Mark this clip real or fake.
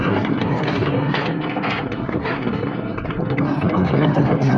fake